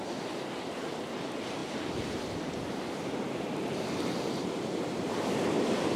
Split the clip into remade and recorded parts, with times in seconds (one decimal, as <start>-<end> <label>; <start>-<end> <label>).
0.0-1.6 recorded; 1.6-5.2 remade; 5.2-6.0 recorded